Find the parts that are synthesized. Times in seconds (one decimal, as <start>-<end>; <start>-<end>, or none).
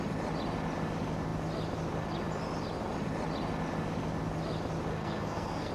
4.9-5.7